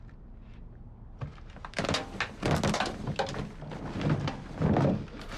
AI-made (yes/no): no